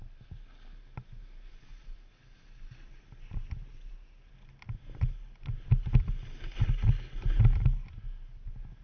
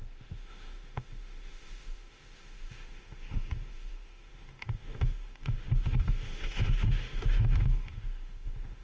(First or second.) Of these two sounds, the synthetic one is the second